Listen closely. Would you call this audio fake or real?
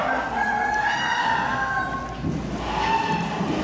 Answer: real